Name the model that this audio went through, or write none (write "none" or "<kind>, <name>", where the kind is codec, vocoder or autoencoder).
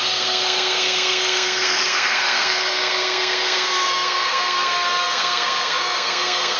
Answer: codec, SNAC